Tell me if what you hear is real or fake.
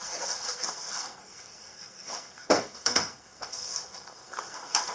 fake